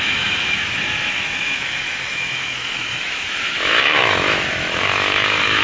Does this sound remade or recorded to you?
remade